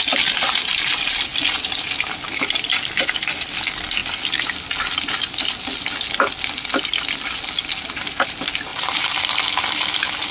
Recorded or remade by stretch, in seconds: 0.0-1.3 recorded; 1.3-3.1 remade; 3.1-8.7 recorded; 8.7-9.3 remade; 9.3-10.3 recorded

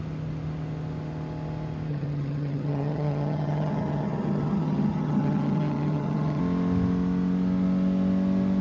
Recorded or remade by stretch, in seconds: 0.0-1.9 recorded; 1.9-6.4 remade; 6.4-8.6 recorded